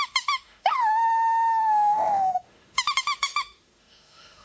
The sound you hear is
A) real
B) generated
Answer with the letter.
B